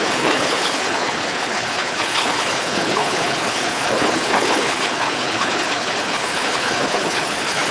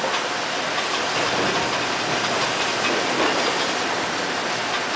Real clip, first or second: second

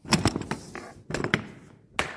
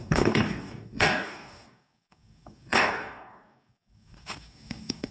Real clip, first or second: first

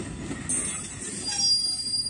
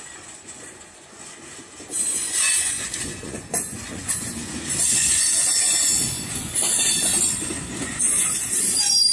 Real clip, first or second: first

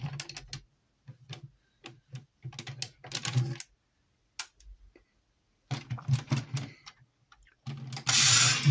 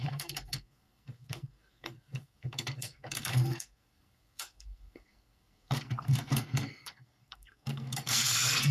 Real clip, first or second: first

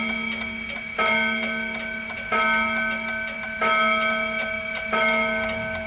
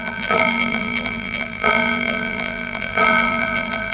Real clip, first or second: first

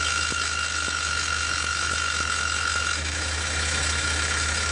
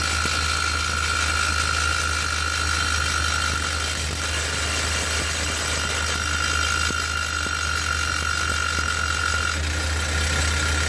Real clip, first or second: second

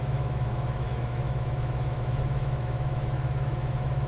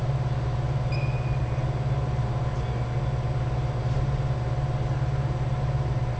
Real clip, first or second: second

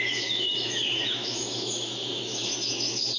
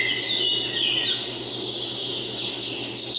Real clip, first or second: second